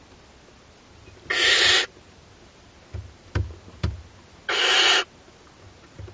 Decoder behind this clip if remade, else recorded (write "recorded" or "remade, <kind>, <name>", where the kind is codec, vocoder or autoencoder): recorded